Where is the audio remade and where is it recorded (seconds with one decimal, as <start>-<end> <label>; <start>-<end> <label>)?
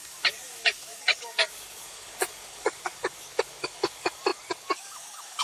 0.0-5.4 remade